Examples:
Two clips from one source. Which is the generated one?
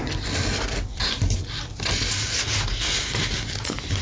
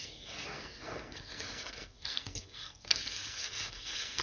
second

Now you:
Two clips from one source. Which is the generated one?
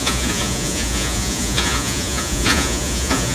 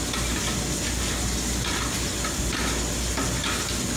first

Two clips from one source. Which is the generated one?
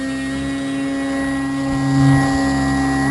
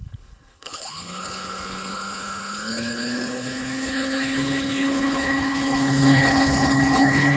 second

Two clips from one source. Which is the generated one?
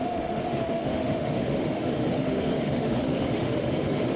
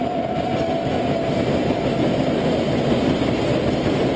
first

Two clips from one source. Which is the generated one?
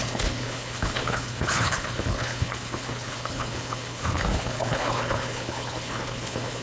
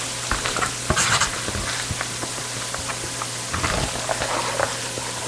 first